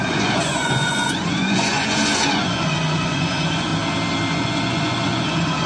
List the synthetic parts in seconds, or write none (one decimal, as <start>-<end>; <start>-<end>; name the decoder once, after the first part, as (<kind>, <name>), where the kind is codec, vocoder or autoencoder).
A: 0.0-3.7 (vocoder, Vocos); 4.3-5.7

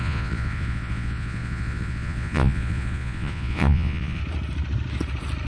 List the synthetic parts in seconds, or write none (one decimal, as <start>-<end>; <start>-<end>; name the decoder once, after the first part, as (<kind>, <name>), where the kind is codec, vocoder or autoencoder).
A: 0.0-4.2 (vocoder, Vocos)

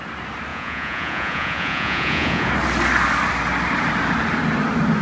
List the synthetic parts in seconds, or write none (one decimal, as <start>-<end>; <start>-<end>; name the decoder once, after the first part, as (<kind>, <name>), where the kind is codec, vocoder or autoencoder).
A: 0.5-2.5 (vocoder, Vocos)

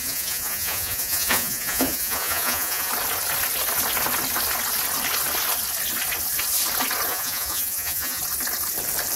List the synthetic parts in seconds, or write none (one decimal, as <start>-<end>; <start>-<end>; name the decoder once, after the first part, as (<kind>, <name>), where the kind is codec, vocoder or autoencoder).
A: 0.0-2.9 (vocoder, Vocos); 7.1-8.2

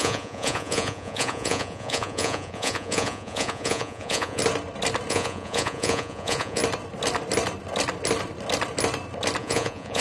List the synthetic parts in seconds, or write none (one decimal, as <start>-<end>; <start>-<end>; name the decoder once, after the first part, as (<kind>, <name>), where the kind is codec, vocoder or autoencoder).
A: 0.0-4.4 (vocoder, Vocos); 5.1-6.6; 9.4-10.0

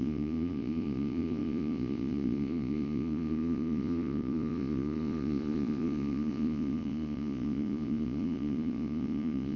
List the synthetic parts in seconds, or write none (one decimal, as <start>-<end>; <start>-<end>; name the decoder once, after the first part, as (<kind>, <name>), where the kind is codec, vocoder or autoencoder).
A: 0.0-9.6 (vocoder, Vocos)